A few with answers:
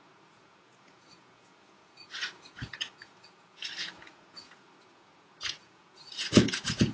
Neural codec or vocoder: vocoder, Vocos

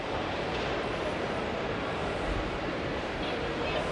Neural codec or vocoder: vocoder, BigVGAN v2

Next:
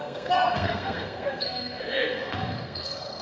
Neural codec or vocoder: codec, SNAC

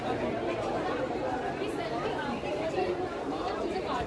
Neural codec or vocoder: vocoder, BigVGAN v2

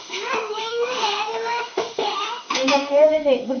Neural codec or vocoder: autoencoder, DAC-VAE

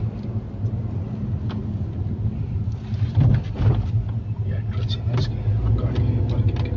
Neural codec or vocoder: none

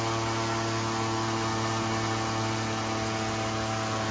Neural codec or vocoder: none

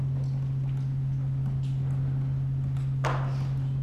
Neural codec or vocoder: none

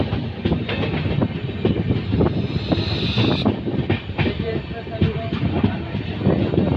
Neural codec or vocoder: none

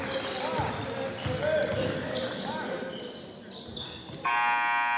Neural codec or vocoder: none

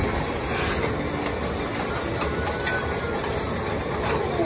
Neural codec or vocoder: none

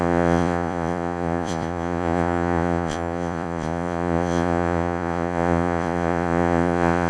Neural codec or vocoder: vocoder, Vocos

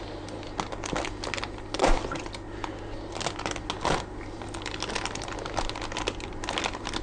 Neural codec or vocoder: none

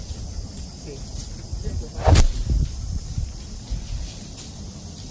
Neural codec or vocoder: none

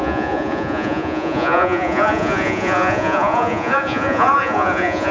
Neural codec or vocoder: vocoder, Vocos